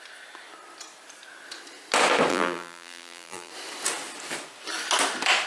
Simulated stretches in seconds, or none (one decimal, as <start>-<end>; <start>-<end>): 2.3-3.5